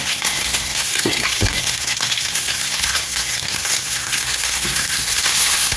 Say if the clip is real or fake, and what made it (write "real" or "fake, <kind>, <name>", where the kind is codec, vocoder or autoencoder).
fake, codec, SNAC